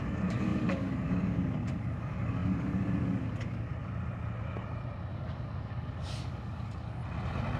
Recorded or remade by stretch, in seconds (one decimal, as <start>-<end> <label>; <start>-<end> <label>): 0.0-3.7 remade; 3.7-5.1 recorded; 5.1-7.0 remade; 7.0-7.6 recorded

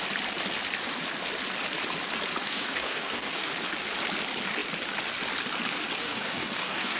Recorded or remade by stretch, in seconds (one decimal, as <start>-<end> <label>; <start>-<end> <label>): 0.0-2.5 recorded; 2.5-3.5 remade; 3.5-6.0 recorded; 6.0-7.0 remade

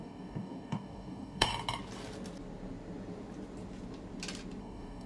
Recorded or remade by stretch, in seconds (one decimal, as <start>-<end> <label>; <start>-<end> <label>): 0.0-1.5 remade; 1.5-4.6 recorded; 4.6-5.1 remade

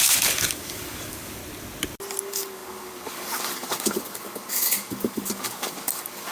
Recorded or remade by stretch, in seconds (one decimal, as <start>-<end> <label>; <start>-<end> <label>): 0.0-1.4 remade; 1.4-2.2 recorded; 2.2-6.3 remade

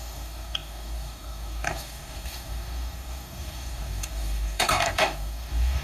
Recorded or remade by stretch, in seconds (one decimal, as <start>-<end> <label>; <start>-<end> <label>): 0.0-5.8 remade

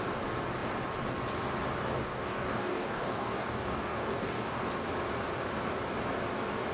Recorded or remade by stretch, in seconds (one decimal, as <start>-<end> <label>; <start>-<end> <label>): 0.0-1.8 recorded; 1.8-4.6 remade; 4.6-6.7 recorded